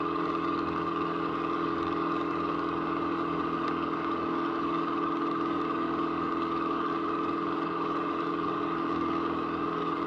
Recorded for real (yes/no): no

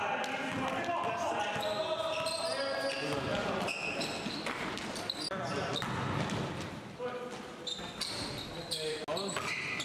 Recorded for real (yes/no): yes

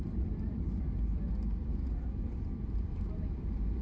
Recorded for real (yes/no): no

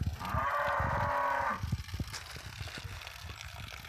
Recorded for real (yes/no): yes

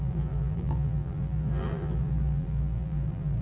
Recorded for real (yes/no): no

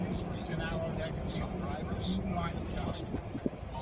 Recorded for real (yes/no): yes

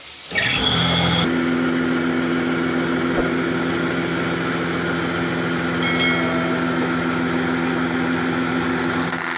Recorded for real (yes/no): yes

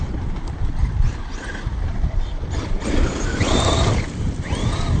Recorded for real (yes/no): yes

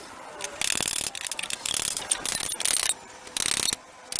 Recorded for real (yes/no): yes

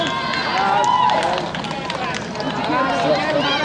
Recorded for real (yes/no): yes